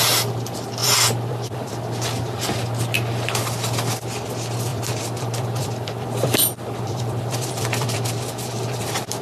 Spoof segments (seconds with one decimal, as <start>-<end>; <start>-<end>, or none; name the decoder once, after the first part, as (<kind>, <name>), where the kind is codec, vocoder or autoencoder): 0.8-1.7 (vocoder, BigVGAN v2); 4.7-9.2